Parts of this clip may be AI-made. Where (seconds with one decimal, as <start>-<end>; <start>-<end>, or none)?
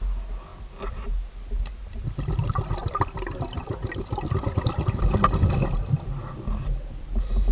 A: none